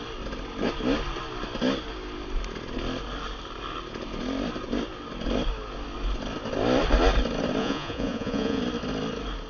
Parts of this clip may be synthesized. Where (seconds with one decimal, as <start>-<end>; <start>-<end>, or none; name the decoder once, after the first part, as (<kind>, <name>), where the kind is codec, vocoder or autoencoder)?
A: 7.6-8.6 (vocoder, Vocos)

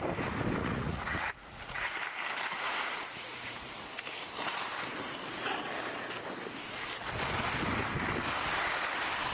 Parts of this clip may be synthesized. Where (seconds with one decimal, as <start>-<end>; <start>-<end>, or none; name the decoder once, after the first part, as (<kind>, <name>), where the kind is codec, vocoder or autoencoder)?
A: 0.6-2.0 (vocoder, Vocos); 2.5-3.9

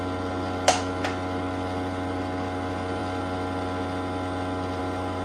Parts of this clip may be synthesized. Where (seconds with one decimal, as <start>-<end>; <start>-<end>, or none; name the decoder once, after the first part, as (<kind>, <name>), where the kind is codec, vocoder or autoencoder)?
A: none

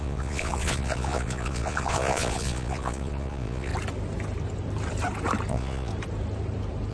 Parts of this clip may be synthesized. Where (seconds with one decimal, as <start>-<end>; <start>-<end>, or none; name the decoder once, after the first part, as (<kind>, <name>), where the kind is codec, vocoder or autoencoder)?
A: 0.0-3.7 (vocoder, Vocos); 5.5-5.9

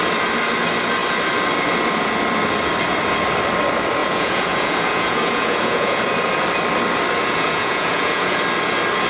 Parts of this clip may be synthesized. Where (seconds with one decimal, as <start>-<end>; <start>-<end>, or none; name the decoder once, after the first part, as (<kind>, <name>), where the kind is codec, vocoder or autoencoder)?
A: 4.0-6.1 (vocoder, Vocos); 7.2-8.4

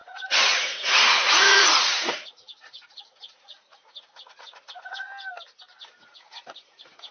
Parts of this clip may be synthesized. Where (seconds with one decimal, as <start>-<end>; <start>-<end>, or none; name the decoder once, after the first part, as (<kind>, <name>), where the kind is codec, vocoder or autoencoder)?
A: 0.0-5.1 (vocoder, Vocos); 6.0-7.1